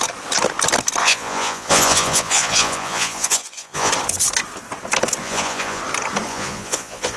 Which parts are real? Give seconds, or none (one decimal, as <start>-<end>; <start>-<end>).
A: 0.0-1.0; 3.9-5.2; 5.8-6.3